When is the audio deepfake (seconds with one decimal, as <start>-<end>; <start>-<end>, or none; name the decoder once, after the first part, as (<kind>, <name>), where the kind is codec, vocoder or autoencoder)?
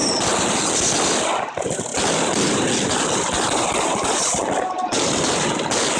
none